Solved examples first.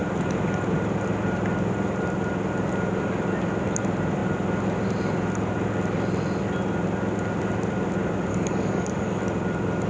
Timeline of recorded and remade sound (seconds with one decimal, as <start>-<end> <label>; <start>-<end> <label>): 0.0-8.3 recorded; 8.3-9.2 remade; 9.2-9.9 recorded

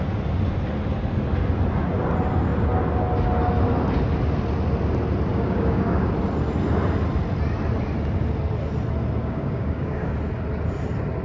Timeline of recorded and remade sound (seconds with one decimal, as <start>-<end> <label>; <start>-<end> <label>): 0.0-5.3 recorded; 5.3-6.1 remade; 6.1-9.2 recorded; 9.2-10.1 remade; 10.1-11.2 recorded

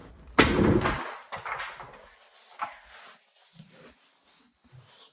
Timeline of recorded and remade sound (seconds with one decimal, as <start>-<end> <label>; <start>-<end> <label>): 0.0-5.1 recorded

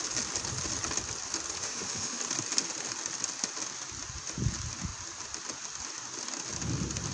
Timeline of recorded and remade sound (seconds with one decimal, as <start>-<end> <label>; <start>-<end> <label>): 0.0-1.6 recorded; 1.6-2.2 remade; 2.2-7.1 recorded

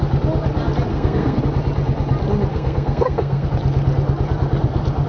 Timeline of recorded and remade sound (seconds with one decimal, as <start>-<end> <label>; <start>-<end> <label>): 0.0-0.9 recorded; 0.9-1.4 remade; 1.4-2.5 recorded; 2.5-3.5 remade; 3.5-5.1 recorded

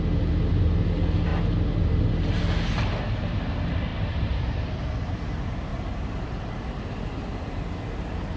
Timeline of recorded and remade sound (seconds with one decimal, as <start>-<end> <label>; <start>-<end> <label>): 0.0-3.9 recorded; 3.9-5.2 remade; 5.2-5.7 recorded; 5.7-7.9 remade; 7.9-8.4 recorded